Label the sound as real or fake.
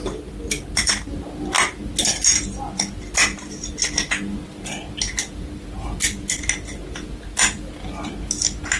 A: real